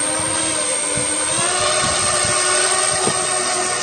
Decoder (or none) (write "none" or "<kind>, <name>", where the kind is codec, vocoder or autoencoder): none